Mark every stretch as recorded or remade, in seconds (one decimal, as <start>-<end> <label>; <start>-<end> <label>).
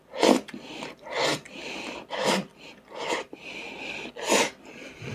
0.0-5.1 recorded